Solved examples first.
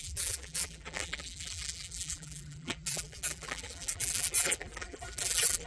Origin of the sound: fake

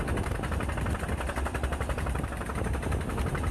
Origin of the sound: fake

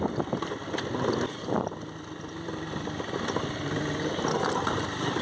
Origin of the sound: fake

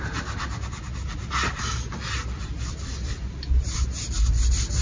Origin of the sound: real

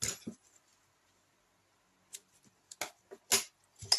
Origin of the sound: real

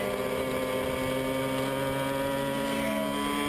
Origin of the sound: real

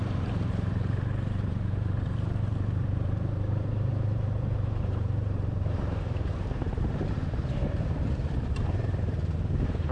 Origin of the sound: fake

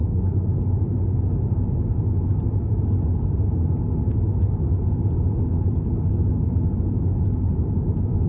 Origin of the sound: real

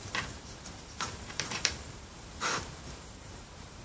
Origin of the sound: fake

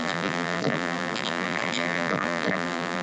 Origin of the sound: fake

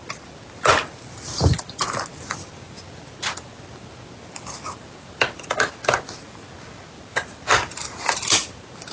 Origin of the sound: real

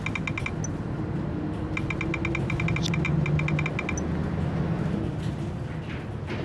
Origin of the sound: real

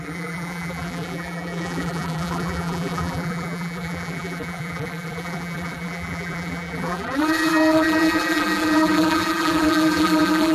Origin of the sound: fake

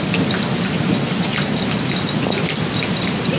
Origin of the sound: real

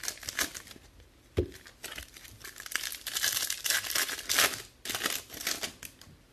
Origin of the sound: real